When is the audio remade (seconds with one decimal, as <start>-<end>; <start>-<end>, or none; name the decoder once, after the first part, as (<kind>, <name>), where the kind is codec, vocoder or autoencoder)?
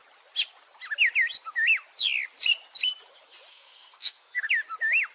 3.5-4.5 (codec, SNAC)